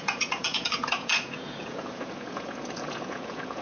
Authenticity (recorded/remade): remade